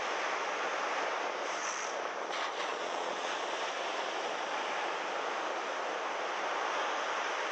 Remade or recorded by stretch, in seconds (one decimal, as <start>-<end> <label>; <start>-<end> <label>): 0.0-2.7 recorded; 2.7-3.3 remade; 3.3-7.5 recorded